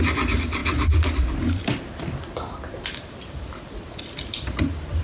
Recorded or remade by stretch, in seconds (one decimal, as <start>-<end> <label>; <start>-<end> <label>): 0.0-5.0 recorded